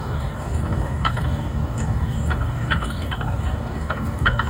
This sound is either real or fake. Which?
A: fake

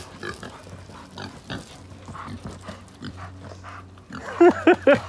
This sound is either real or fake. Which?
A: real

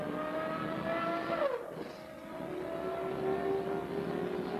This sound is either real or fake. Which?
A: real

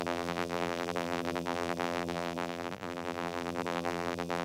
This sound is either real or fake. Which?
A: fake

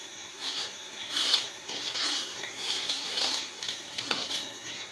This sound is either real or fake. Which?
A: fake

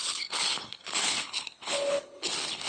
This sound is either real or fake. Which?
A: fake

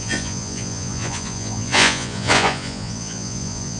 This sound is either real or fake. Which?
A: fake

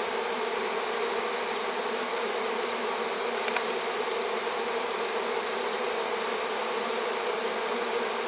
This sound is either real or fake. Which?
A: real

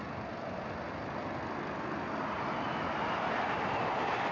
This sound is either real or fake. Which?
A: real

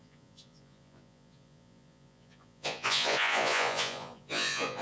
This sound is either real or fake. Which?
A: fake